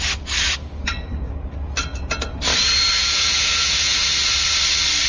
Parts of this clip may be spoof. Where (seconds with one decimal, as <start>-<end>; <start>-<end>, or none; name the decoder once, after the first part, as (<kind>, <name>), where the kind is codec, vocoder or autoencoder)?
3.0-4.0 (vocoder, Vocos)